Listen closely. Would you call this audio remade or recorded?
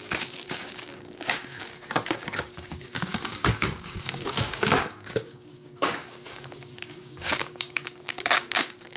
remade